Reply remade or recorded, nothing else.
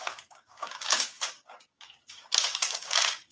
remade